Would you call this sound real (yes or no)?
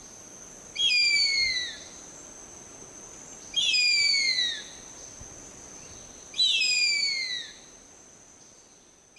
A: yes